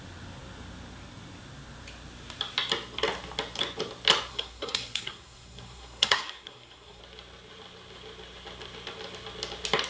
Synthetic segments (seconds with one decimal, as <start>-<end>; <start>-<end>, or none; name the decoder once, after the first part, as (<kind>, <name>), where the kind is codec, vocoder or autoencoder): 4.3-7.0 (codec, SNAC)